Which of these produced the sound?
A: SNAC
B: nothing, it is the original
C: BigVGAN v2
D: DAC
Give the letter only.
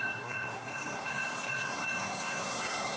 A